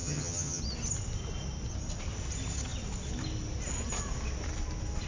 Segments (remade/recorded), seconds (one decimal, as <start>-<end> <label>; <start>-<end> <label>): 0.0-0.6 remade; 0.6-5.1 recorded